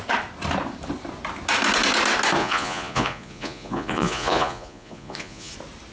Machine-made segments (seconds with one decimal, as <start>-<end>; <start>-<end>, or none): 2.4-5.5